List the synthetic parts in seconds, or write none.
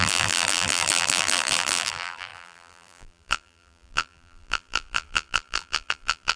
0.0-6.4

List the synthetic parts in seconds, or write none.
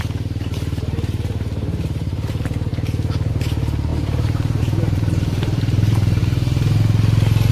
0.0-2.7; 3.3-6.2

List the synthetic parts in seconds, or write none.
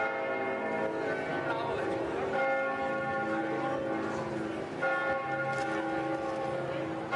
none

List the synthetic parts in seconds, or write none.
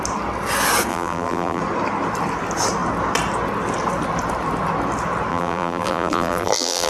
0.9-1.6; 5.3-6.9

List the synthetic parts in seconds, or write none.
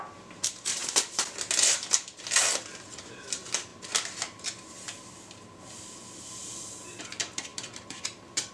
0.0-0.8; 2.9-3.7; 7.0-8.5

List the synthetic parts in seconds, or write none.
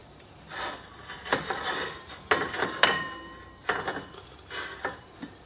0.0-2.2; 3.9-5.5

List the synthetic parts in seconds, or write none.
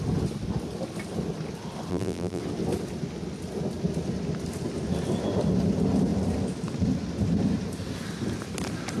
1.9-2.4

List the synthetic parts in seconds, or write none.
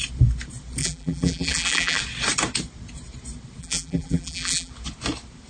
0.8-2.0; 3.6-4.7